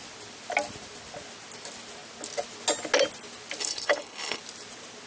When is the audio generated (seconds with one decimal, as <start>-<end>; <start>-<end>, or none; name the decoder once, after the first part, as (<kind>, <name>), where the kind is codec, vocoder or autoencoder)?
3.6-4.4 (codec, HILCodec)